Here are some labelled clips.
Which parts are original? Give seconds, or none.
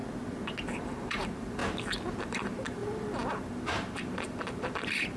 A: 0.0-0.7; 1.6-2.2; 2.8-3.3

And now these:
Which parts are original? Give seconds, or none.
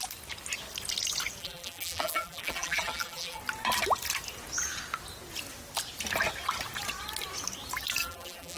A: 0.0-1.4; 3.4-8.0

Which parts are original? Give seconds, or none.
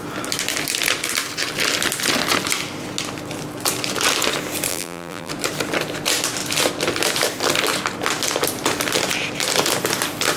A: 0.0-4.7; 5.3-10.4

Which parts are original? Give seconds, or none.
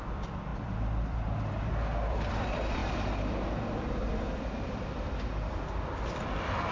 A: none